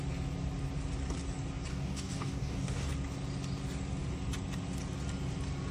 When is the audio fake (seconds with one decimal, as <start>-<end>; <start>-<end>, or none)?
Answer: 1.7-2.9